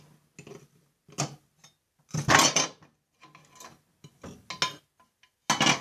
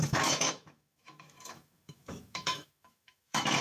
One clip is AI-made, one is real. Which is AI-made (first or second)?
second